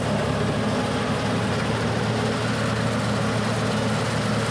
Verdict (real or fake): real